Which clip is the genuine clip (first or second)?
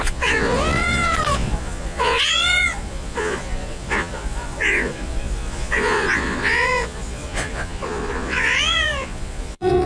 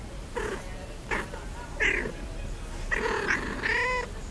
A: second